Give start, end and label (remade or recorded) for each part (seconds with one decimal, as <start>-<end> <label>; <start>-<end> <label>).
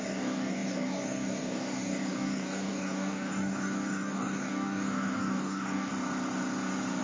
0.0-5.9 remade; 5.9-7.0 recorded